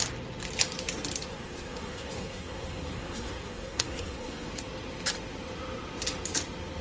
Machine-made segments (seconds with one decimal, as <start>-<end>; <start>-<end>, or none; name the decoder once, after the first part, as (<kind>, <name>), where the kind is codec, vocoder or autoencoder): 1.3-4.5 (codec, SNAC)